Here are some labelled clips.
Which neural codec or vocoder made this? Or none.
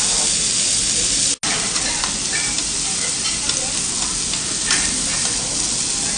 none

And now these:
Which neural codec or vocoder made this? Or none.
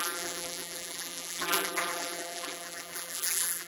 vocoder, BigVGAN v2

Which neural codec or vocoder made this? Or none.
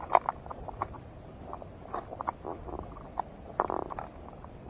none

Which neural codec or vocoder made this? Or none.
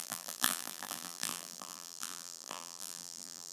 vocoder, BigVGAN v2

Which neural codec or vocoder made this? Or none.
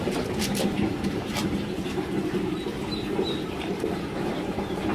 vocoder, BigVGAN v2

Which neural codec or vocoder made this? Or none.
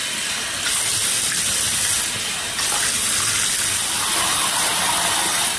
none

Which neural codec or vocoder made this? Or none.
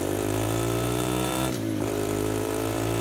vocoder, BigVGAN v2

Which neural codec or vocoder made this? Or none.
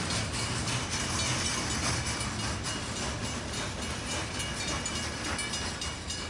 none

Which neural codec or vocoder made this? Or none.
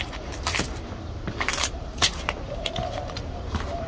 vocoder, BigVGAN v2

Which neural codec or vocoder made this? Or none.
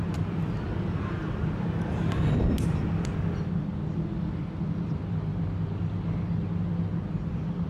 none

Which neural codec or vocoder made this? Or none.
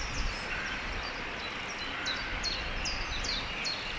none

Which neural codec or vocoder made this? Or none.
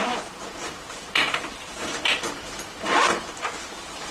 vocoder, BigVGAN v2